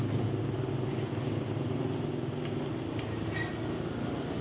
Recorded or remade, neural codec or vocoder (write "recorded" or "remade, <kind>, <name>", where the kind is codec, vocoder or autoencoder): recorded